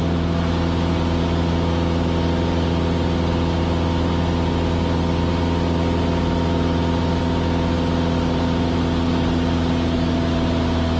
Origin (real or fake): real